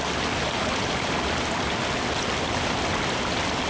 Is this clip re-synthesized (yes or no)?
no